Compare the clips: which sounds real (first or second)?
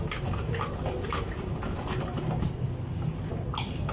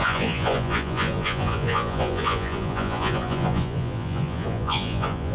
first